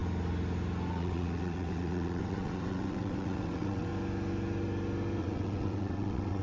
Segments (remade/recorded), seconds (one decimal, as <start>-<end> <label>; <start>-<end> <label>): 0.0-0.9 recorded; 0.9-3.9 remade; 3.9-5.2 recorded; 5.2-6.4 remade